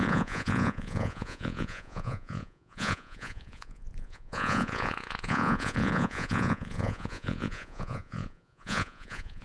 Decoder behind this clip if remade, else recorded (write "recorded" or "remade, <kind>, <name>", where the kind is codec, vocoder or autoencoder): remade, vocoder, Vocos